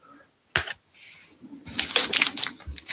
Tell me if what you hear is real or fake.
real